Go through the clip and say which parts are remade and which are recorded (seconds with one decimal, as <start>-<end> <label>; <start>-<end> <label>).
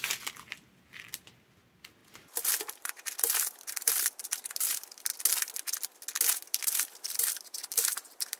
0.0-5.1 remade; 5.1-6.5 recorded; 6.5-8.4 remade